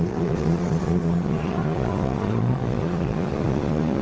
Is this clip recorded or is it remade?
remade